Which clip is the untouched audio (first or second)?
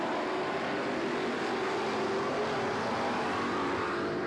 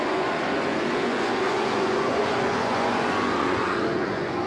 first